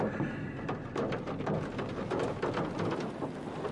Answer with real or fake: real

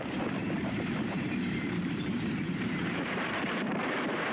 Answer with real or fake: fake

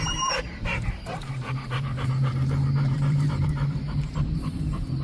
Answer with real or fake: fake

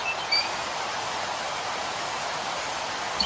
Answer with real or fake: fake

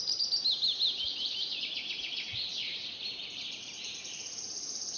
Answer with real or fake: fake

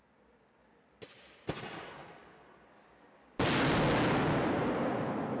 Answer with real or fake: real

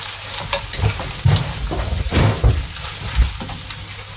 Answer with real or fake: real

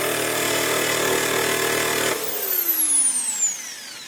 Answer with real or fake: real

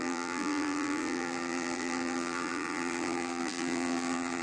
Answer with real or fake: fake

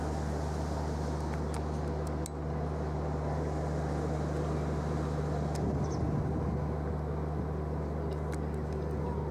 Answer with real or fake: real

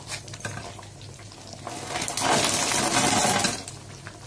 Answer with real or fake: real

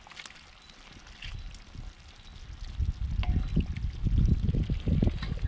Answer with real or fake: real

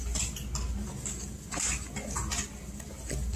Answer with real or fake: real